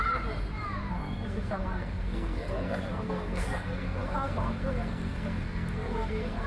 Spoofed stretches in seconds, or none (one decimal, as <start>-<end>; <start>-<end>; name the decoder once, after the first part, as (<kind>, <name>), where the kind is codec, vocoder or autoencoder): 0.9-6.5 (codec, SNAC)